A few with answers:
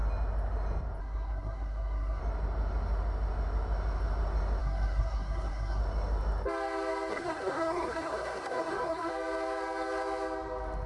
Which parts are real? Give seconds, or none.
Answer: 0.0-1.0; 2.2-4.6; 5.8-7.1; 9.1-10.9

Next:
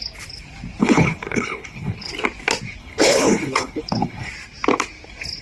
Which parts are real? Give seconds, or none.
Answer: 0.0-0.8; 2.1-2.8; 4.3-5.4